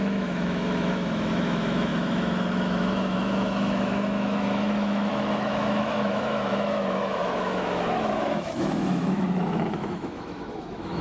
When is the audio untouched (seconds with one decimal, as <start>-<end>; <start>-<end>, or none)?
none